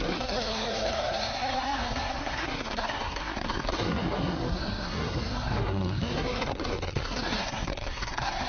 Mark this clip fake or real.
fake